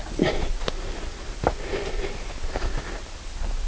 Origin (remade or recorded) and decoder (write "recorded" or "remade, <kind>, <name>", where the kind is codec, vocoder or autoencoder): recorded